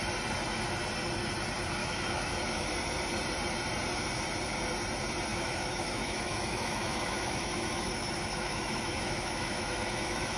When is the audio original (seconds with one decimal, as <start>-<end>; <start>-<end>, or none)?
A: 0.0-1.8; 2.7-5.3